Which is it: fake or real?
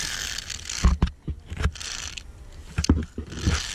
real